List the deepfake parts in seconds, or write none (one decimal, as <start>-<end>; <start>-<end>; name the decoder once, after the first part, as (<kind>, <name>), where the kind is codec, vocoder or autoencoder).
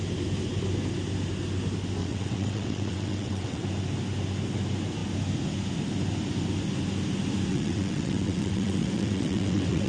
2.0-3.6 (vocoder, WaveNeXt); 7.5-9.9